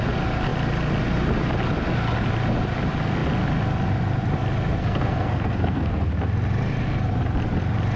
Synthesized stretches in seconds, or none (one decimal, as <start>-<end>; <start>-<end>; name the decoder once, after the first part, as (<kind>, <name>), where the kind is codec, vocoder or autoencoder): 4.8-6.1 (codec, SNAC)